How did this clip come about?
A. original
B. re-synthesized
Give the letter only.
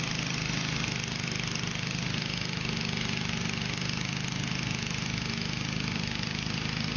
A